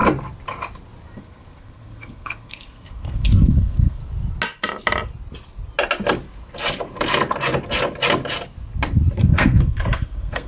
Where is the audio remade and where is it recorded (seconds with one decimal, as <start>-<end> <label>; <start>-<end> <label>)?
0.0-1.2 recorded; 1.2-4.0 remade; 4.0-9.2 recorded; 9.2-10.5 remade